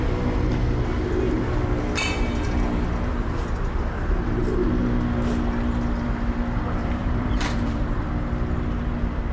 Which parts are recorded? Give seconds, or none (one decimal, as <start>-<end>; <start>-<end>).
0.0-6.8; 8.1-9.3